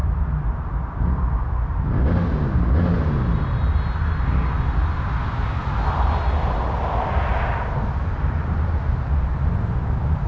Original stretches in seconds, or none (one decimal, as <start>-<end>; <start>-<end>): 0.0-10.3

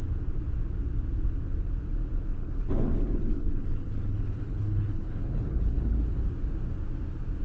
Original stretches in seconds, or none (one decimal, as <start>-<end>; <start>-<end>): 0.0-2.4; 6.2-7.4

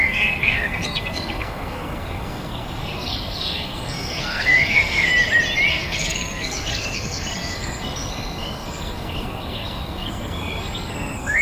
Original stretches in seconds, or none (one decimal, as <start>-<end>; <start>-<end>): 5.1-5.7